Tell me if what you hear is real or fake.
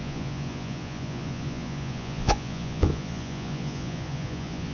fake